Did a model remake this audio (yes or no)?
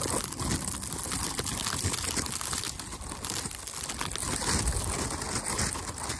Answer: no